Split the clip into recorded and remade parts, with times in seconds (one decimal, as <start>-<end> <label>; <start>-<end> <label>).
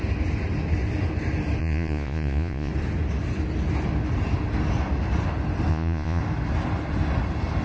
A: 0.0-1.6 recorded; 1.6-2.7 remade; 2.7-5.7 recorded; 5.7-6.2 remade; 6.2-7.6 recorded